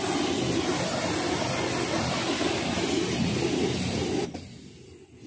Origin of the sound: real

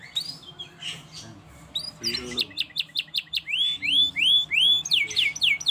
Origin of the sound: real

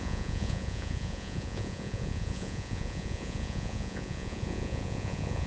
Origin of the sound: fake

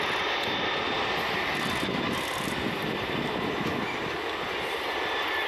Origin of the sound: real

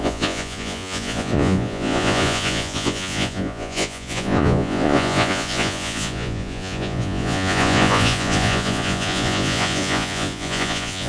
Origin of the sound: fake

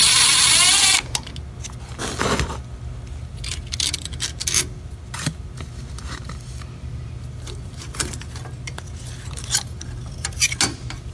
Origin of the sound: real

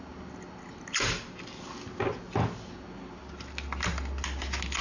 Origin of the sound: real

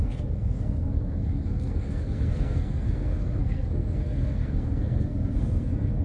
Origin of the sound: fake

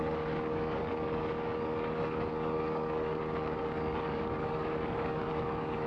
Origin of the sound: fake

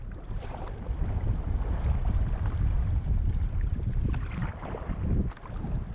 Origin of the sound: real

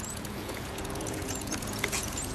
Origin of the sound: fake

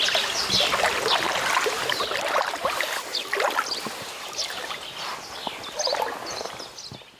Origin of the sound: real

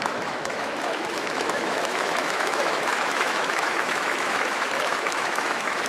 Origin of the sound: fake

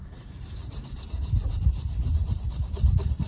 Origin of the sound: fake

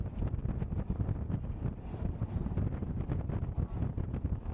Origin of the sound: real